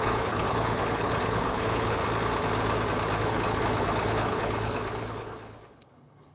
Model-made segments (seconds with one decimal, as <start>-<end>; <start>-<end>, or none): 0.0-2.0; 3.2-6.3